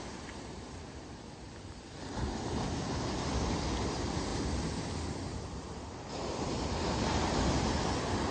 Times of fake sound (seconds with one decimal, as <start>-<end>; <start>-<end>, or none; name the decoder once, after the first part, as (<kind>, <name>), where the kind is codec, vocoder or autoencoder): none